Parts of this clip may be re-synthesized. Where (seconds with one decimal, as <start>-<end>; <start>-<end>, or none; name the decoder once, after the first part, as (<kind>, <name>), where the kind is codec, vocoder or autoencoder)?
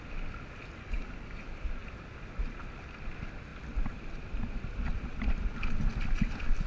0.8-1.4 (codec, DAC)